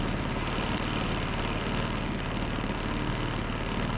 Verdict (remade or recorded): recorded